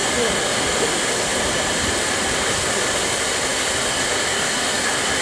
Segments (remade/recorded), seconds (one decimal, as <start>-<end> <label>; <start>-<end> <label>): 0.0-1.3 recorded; 1.3-2.1 remade; 2.1-5.2 recorded